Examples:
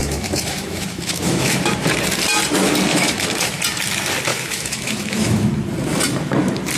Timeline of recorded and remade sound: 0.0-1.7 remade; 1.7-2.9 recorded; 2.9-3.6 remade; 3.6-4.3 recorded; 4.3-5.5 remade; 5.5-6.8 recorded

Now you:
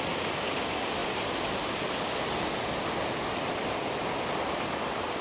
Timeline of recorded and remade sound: 0.0-5.2 recorded